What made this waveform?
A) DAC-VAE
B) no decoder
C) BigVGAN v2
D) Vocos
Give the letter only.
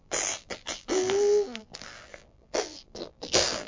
C